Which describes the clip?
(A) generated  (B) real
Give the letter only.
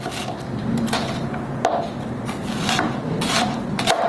B